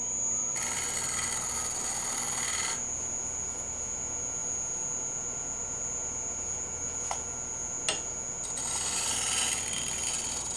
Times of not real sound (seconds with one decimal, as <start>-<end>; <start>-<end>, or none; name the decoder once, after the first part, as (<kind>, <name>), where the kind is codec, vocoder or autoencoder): none